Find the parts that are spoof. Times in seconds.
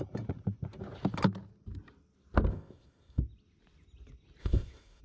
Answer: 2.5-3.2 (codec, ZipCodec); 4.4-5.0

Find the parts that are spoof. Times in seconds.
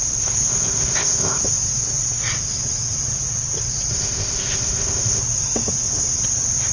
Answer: 0.5-1.4 (codec, ZipCodec); 3.9-5.2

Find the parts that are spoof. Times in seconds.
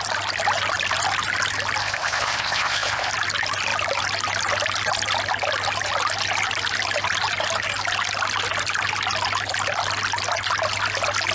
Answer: 1.8-3.1 (codec, ZipCodec)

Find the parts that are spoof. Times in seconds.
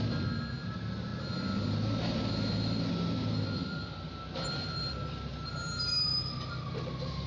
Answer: none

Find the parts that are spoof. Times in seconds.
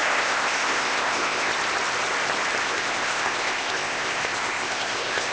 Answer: 0.0-1.5 (codec, ZipCodec); 2.6-5.3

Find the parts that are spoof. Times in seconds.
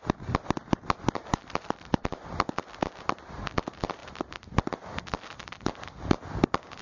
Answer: none